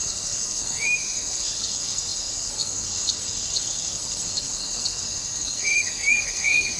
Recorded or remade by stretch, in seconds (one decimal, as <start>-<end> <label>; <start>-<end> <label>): 0.0-6.8 remade